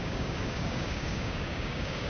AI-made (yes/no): yes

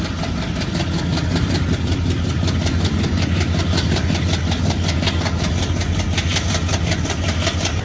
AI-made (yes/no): no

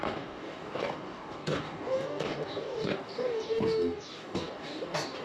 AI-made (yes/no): yes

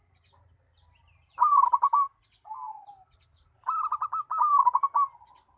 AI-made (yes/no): no